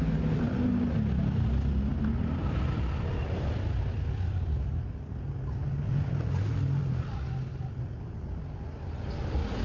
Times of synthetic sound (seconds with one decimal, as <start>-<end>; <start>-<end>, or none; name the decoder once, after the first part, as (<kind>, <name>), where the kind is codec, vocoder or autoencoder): none